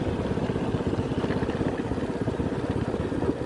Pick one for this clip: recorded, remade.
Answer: recorded